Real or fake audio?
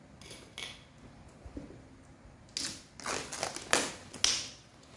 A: real